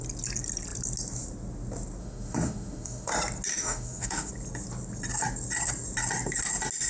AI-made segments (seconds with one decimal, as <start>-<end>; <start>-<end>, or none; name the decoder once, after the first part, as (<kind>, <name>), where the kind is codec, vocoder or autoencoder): 2.0-3.1 (autoencoder, DAC-VAE); 3.5-4.3